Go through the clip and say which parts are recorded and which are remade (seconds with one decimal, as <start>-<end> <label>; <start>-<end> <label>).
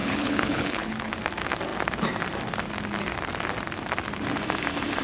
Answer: 0.0-1.1 remade; 1.1-5.0 recorded